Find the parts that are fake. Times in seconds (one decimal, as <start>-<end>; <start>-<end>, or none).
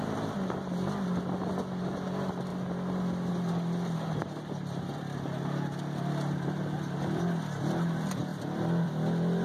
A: 8.3-8.9